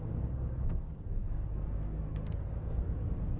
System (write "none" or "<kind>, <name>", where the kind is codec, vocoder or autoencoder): codec, SNAC